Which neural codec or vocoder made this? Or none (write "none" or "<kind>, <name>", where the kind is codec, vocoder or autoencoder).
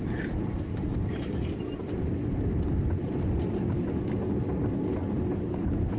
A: none